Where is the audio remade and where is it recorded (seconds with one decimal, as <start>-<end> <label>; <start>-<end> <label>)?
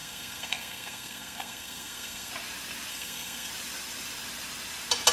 0.0-2.3 remade; 2.3-2.9 recorded; 2.9-3.5 remade; 3.5-5.1 recorded